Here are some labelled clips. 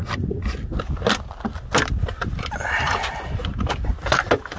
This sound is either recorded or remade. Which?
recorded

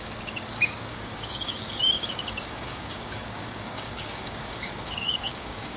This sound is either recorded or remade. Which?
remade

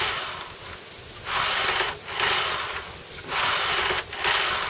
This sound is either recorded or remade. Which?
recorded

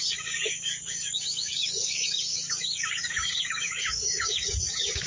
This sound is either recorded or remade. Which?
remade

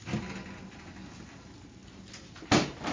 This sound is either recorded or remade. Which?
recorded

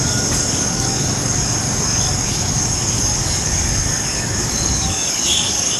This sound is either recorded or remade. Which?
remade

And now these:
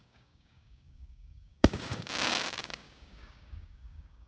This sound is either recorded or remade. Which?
remade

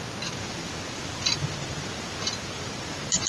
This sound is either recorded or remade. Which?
recorded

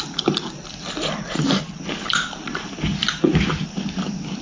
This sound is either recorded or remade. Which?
recorded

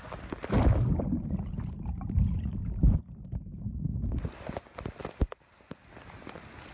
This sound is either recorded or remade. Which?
recorded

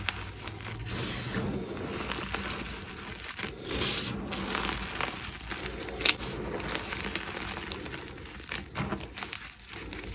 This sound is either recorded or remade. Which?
recorded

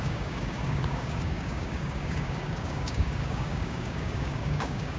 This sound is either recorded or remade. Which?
remade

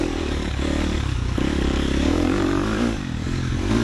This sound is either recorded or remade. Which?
remade